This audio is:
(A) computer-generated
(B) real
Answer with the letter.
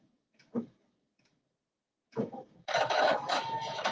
A